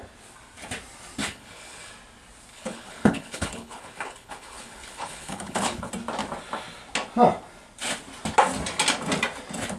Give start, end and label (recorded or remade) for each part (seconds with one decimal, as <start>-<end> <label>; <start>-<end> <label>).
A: 0.0-1.2 recorded; 1.2-1.9 remade; 1.9-2.5 recorded; 2.5-5.9 remade; 5.9-9.8 recorded